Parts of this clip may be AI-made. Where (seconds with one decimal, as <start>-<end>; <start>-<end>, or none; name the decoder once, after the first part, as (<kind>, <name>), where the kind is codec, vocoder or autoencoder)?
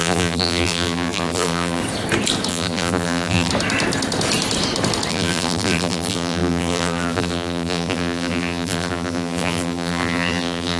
0.0-1.8 (vocoder, BigVGAN v2); 2.5-3.5; 5.1-10.8